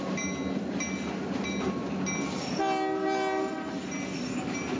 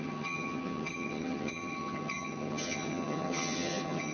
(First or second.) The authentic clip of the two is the first